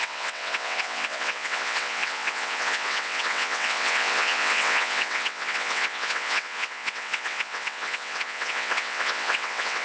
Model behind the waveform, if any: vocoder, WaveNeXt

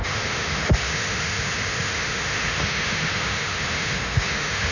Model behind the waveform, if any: autoencoder, DAC-VAE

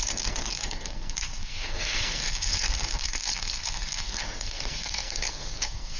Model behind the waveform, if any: codec, SNAC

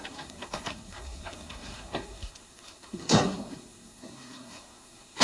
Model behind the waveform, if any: codec, SNAC